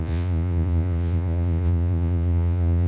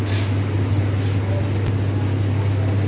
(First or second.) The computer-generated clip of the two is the first